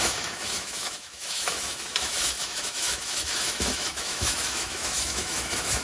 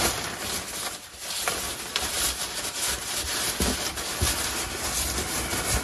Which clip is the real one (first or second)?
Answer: second